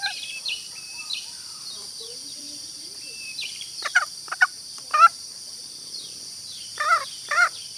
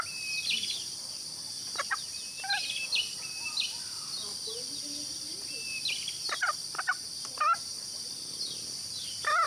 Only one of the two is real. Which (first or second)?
second